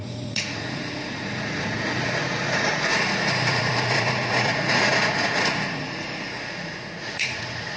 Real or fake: fake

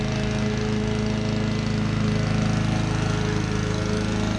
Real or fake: real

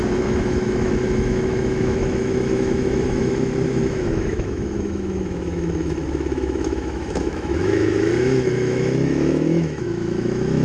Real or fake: fake